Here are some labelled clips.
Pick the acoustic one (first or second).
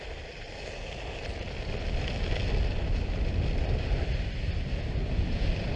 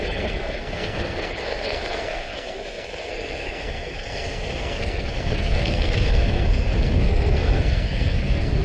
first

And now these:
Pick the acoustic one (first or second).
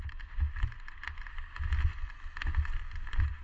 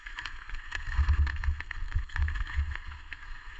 first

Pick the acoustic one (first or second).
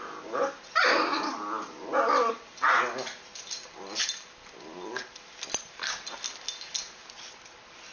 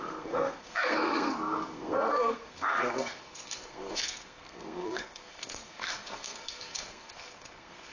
first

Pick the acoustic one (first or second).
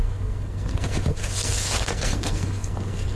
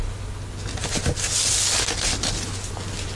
second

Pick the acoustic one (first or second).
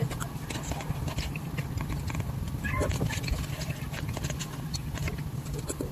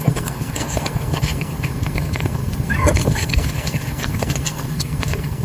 first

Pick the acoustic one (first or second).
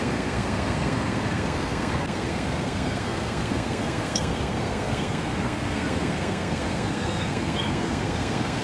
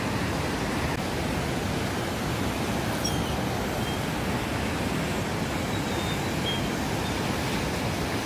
second